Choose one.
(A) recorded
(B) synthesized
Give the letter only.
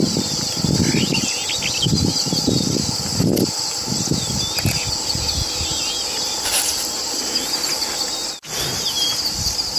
A